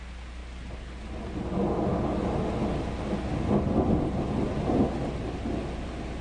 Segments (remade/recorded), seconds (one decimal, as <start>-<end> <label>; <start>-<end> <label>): 0.0-6.2 recorded